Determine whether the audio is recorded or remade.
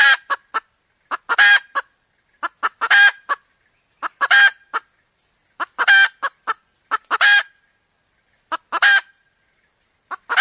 recorded